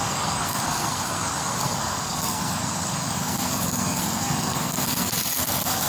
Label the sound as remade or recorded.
remade